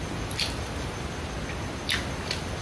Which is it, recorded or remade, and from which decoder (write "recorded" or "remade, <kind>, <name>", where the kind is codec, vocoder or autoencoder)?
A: recorded